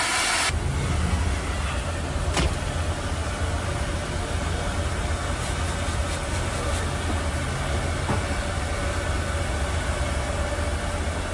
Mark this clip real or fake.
real